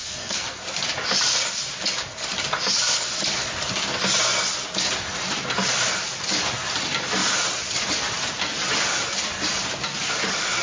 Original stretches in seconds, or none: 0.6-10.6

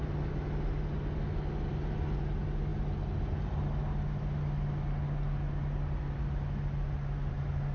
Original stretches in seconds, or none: 0.0-7.7